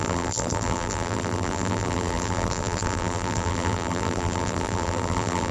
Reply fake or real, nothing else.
fake